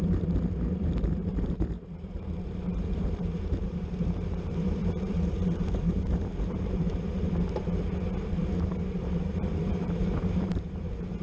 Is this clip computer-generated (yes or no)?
yes